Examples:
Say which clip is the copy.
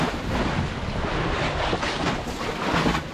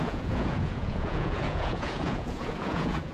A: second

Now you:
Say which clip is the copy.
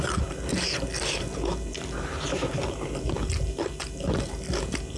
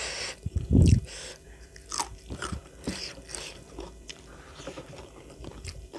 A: second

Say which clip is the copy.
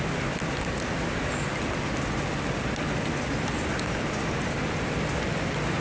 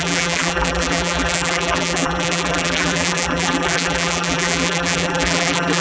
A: second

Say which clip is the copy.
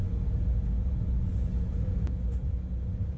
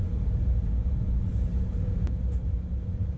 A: second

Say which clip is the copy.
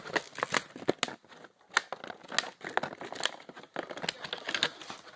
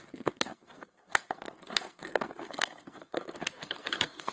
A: second